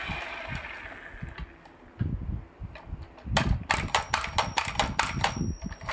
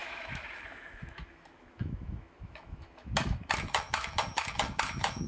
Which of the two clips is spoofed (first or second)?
second